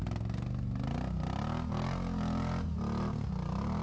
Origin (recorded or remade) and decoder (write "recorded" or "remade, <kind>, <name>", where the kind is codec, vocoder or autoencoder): recorded